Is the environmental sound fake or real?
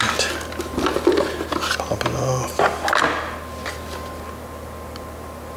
real